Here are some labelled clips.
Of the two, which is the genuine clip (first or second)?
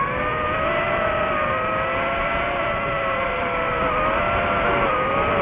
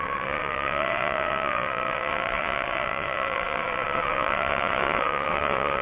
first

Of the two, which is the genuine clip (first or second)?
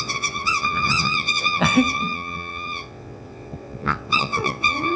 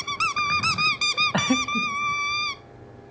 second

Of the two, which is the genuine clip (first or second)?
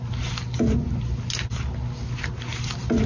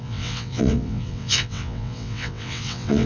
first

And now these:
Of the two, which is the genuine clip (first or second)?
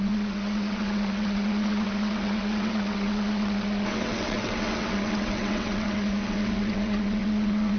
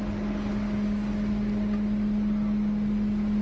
second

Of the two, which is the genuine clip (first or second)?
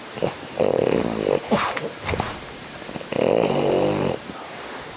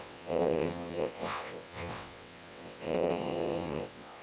first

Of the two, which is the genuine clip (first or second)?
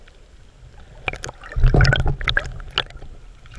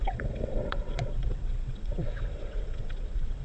first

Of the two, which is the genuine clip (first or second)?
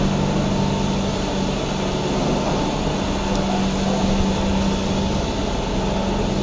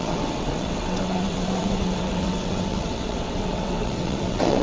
first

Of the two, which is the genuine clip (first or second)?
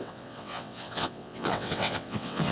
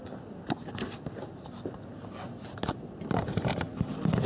second